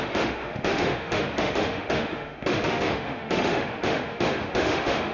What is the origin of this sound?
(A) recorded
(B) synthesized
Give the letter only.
B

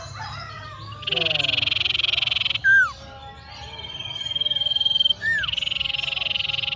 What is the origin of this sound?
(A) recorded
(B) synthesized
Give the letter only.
A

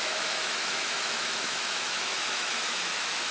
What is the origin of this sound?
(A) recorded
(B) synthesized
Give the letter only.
B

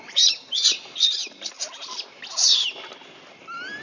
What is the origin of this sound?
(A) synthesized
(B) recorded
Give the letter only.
B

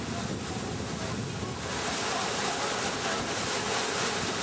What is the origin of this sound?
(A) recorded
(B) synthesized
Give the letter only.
A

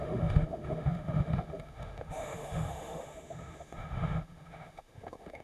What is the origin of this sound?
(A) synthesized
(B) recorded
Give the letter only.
A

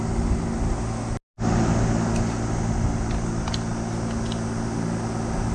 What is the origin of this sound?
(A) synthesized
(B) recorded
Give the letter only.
B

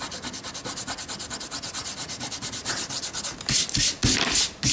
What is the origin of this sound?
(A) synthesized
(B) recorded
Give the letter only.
B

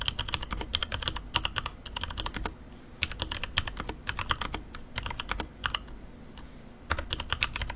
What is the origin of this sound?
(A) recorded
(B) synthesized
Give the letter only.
A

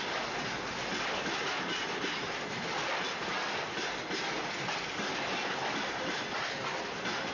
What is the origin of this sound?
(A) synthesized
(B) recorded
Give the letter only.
B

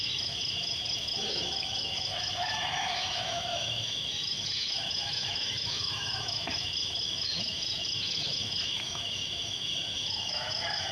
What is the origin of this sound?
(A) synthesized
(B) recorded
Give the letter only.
A